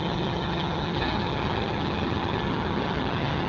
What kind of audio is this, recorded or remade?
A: remade